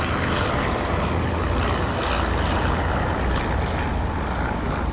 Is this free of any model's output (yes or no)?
yes